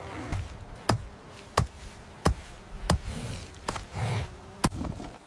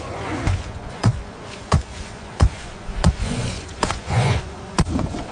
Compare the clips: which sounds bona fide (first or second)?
first